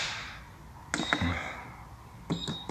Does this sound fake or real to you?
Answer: real